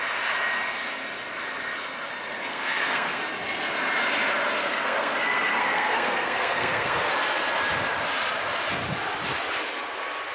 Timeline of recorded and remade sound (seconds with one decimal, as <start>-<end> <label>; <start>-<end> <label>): 0.0-2.5 recorded; 2.5-3.2 remade; 3.2-4.6 recorded; 4.6-7.1 remade; 7.1-10.3 recorded